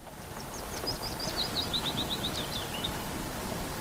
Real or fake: fake